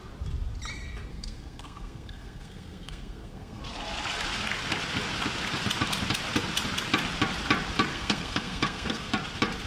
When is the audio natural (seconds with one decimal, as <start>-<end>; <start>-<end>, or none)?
0.0-1.1; 3.6-7.9; 9.1-9.7

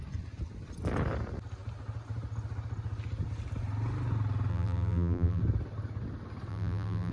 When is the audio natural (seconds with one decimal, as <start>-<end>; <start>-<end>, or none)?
0.0-4.5; 5.4-6.5

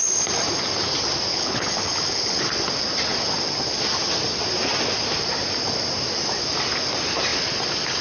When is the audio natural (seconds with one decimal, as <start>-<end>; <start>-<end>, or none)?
0.0-1.3; 2.4-8.0

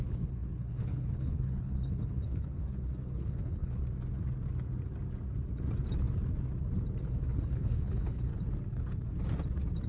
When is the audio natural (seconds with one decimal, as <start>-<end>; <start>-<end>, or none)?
3.8-7.1; 8.3-9.9

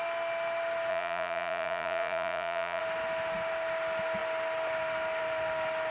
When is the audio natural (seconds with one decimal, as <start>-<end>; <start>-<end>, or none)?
0.0-0.9; 2.8-5.9